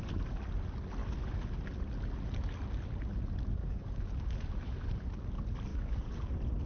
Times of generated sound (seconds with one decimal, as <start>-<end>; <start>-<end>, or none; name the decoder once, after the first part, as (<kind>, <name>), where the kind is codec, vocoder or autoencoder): 3.6-5.0 (codec, DAC); 5.7-6.3